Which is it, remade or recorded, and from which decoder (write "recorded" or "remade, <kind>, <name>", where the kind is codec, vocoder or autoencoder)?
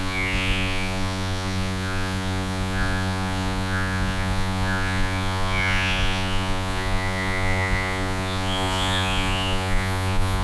remade, vocoder, Vocos